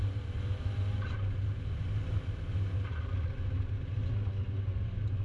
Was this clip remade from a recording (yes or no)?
no